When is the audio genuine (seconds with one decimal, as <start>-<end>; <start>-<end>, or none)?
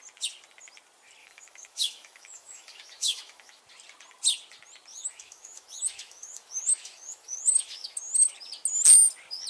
0.0-1.2; 3.6-4.9; 8.0-9.5